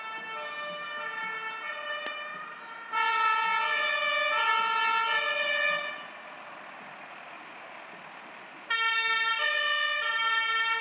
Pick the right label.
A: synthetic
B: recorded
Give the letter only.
B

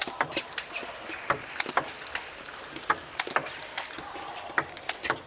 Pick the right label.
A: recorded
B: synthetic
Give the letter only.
A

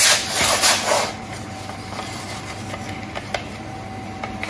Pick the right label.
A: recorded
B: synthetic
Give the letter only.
A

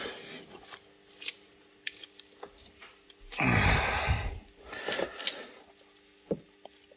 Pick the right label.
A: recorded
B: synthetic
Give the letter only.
A